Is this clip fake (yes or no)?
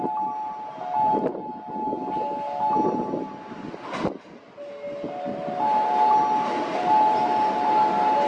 no